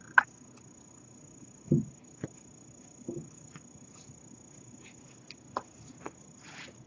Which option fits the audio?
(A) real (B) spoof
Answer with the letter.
A